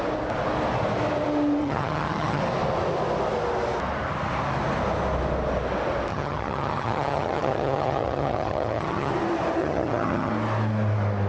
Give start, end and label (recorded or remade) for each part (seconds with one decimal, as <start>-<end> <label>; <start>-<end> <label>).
0.0-1.6 recorded; 1.6-2.4 remade; 2.4-6.1 recorded; 6.1-9.1 remade; 9.1-9.6 recorded; 9.6-10.3 remade; 10.3-11.3 recorded